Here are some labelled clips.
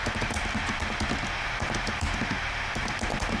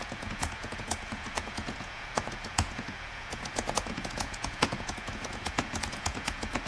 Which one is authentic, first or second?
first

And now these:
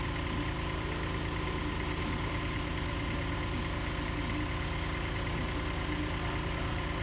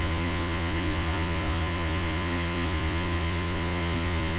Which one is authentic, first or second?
first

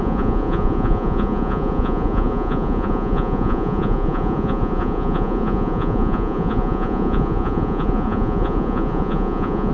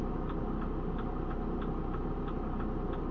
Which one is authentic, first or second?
second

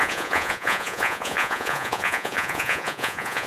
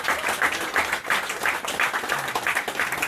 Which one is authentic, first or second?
second